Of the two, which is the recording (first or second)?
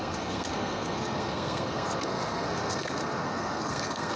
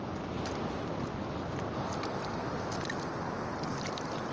second